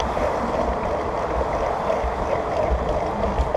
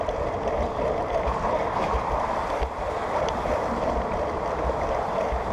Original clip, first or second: first